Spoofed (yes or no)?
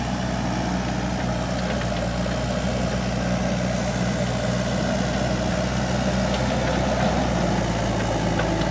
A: no